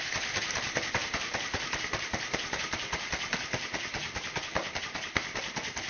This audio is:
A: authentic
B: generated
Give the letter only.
A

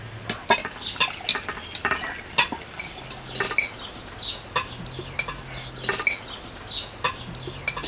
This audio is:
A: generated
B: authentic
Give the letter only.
B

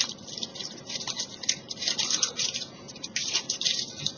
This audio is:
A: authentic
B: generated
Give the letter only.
B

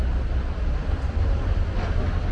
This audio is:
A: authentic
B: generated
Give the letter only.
A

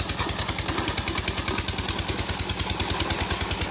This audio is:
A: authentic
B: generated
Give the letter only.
A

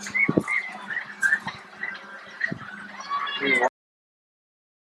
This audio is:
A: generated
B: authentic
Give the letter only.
B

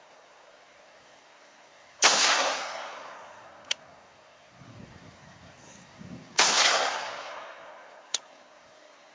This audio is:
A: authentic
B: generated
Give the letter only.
B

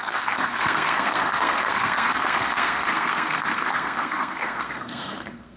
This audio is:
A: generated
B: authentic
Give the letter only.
A